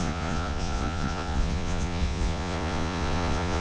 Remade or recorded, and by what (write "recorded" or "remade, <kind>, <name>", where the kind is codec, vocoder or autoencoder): remade, vocoder, Vocos